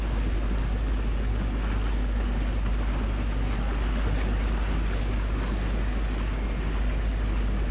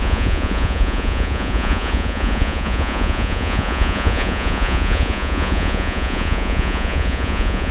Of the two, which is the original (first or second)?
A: first